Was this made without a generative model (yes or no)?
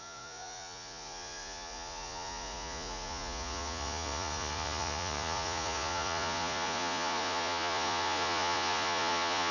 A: no